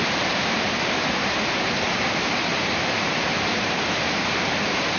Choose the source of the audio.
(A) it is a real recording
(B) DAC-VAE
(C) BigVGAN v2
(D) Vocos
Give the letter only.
C